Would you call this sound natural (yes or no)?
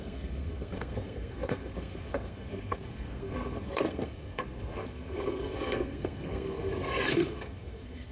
no